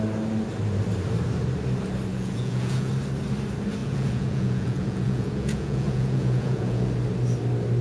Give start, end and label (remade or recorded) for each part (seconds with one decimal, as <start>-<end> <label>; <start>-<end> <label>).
0.0-2.1 recorded; 2.1-2.9 remade; 2.9-3.8 recorded; 3.8-6.9 remade; 6.9-7.8 recorded